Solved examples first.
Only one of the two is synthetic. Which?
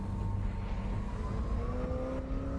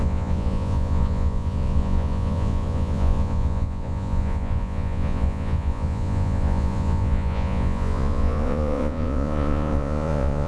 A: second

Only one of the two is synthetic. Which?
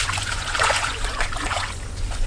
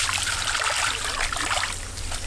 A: first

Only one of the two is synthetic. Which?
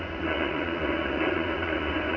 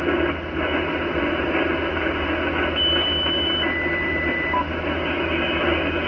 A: first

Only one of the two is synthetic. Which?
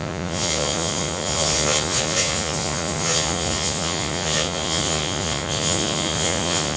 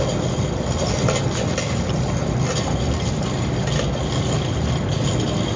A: first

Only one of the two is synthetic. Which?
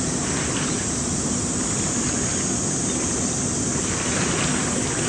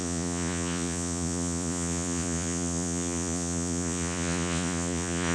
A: second